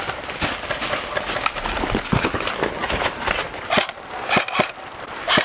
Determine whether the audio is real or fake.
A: real